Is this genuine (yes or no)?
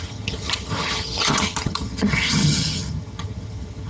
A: no